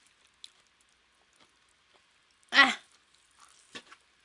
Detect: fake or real real